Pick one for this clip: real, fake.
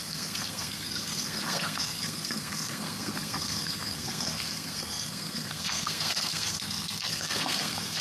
fake